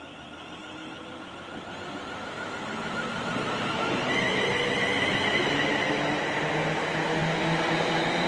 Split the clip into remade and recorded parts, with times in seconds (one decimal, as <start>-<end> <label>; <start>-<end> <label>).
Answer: 0.0-8.3 recorded